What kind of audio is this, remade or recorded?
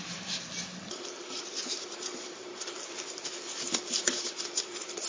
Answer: remade